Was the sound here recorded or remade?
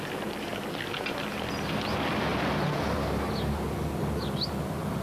recorded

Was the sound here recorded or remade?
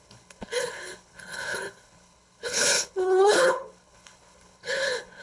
remade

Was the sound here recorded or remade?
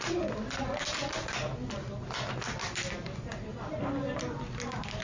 recorded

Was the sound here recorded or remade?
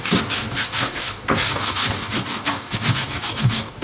remade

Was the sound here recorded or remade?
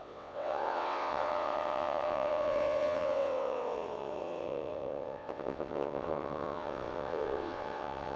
remade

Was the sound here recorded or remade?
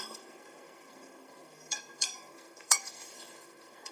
remade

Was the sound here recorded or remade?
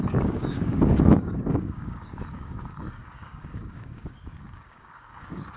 remade